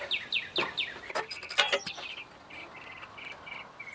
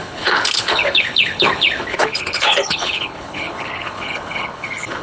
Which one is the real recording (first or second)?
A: first